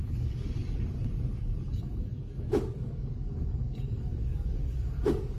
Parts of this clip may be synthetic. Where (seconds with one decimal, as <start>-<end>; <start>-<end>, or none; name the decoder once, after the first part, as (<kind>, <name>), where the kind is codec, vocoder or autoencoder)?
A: 0.0-5.4 (codec, DAC)